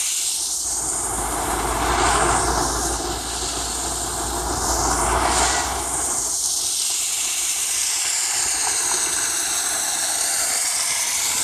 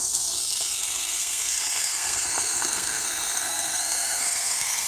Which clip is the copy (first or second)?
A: second